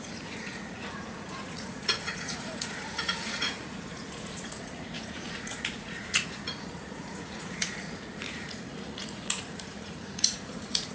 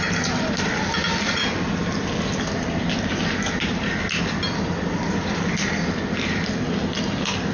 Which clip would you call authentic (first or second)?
second